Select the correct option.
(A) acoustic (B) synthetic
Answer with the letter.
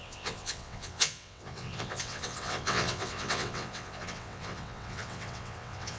B